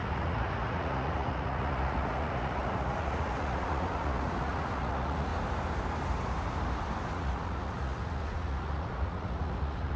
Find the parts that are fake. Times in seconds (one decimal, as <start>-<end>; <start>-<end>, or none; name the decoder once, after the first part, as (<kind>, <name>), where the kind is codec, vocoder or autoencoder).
0.0-5.3 (vocoder, Vocos); 7.1-10.0